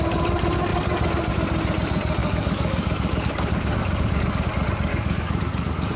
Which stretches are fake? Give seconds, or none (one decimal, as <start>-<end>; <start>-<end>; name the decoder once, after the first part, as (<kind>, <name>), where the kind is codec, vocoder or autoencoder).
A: 2.2-4.5 (codec, DAC); 4.9-6.0